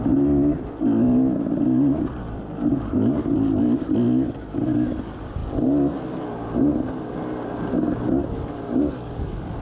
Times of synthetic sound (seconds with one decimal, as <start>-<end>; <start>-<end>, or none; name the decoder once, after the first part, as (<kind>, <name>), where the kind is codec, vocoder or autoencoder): none